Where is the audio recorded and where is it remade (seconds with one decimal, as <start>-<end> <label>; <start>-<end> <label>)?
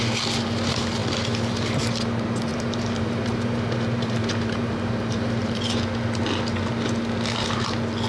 0.0-2.5 recorded; 2.5-5.8 remade; 5.8-8.1 recorded